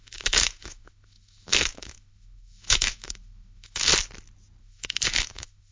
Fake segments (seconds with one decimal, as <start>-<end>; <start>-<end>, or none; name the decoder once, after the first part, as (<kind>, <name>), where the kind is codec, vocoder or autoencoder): 0.0-3.9 (autoencoder, DAC-VAE); 4.6-5.7